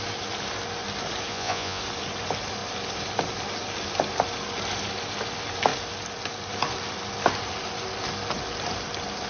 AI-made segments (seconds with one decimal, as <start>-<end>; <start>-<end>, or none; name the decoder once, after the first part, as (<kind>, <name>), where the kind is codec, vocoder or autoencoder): 1.3-1.8 (vocoder, Vocos)